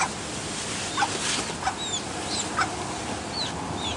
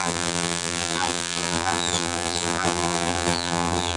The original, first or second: first